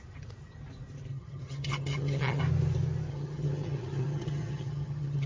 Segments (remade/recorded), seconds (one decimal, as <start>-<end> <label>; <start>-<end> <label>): 0.0-1.1 recorded; 1.1-2.4 remade; 2.4-3.1 recorded; 3.1-5.3 remade